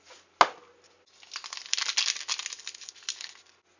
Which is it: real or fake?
real